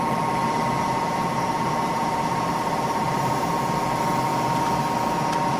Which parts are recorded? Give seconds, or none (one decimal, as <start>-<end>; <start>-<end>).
0.0-0.4; 3.5-5.6